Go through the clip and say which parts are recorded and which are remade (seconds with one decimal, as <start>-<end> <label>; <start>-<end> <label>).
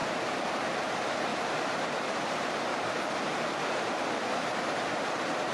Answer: 0.0-1.3 recorded; 1.3-4.0 remade; 4.0-5.5 recorded